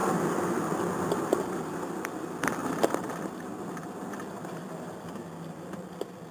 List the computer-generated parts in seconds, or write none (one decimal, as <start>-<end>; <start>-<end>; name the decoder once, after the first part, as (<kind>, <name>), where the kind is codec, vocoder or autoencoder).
none